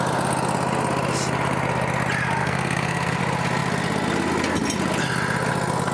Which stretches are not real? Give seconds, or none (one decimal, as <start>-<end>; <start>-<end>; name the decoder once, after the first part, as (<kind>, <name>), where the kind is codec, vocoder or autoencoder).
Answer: 2.4-3.2 (codec, SNAC)